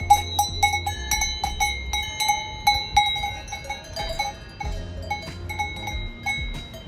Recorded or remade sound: recorded